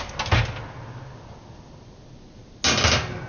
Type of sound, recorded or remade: recorded